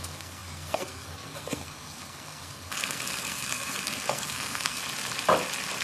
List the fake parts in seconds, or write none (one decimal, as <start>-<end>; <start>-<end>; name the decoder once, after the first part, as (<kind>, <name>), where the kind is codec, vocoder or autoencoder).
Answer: 0.0-4.8 (codec, SNAC)